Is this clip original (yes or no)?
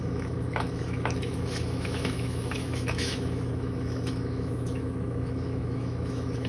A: no